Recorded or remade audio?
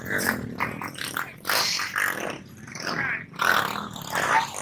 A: recorded